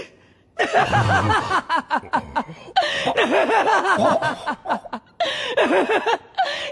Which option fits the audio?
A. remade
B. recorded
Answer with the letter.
B